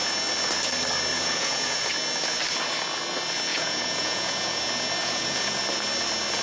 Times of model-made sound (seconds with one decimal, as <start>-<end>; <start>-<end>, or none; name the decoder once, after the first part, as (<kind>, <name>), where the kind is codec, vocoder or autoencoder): 1.1-1.9 (vocoder, Vocos); 3.5-4.6; 5.0-5.6